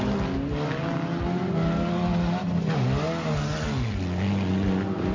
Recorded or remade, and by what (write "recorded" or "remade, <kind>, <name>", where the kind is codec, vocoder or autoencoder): recorded